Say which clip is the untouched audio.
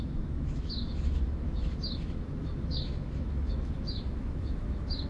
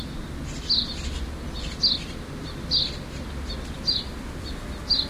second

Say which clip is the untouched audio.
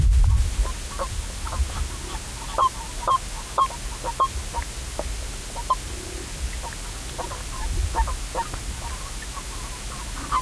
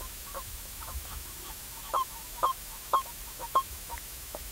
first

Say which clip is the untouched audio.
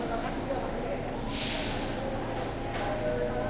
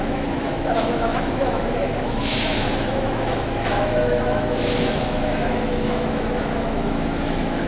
first